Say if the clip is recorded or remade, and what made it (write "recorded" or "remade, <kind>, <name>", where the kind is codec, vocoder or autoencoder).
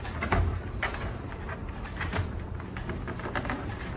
remade, vocoder, BigVGAN v2